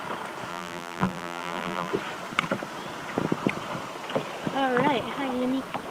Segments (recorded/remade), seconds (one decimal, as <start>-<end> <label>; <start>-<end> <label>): 0.0-0.5 recorded; 0.5-1.9 remade; 1.9-5.9 recorded